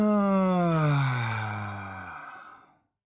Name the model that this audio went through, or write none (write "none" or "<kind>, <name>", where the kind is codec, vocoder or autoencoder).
none